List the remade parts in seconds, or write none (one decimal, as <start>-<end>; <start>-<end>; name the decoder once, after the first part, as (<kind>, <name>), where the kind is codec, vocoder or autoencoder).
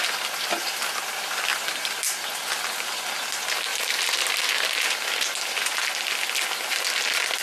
3.7-4.4 (vocoder, BigVGAN v2)